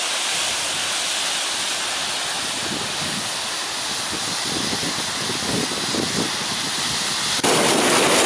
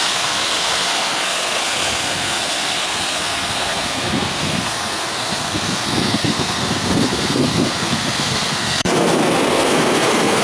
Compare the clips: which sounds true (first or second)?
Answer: first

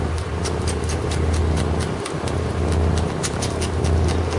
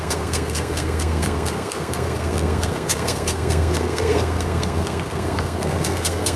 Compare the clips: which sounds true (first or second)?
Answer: first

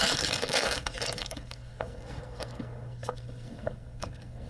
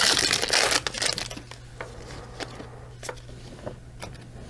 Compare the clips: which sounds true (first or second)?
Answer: second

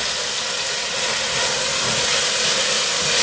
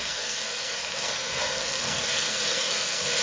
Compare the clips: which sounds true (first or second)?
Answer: first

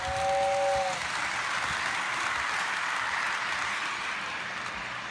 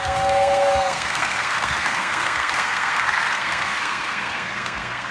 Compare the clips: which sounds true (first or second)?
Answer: first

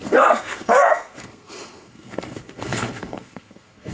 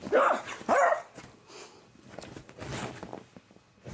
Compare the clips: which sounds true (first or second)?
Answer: second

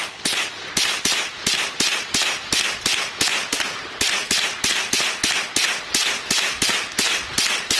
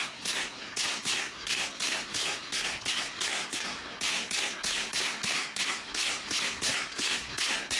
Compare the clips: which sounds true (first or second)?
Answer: first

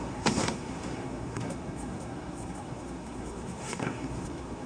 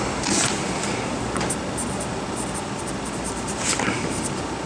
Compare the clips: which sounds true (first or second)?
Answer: second